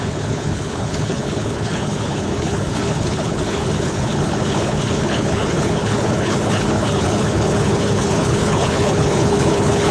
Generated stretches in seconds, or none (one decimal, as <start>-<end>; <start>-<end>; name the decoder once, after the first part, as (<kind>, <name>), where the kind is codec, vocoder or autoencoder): 0.0-9.9 (codec, HILCodec)